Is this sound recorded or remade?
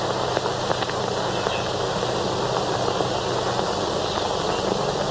recorded